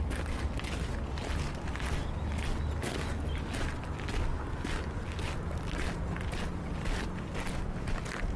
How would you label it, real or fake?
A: real